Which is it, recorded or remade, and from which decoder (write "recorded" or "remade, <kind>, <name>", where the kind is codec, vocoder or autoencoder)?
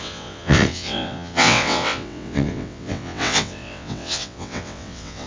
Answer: remade, vocoder, WaveNeXt